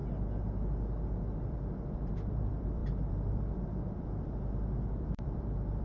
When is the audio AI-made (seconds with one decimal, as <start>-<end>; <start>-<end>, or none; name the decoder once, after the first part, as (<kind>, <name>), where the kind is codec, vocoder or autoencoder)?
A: 1.4-5.8 (vocoder, BigVGAN v2)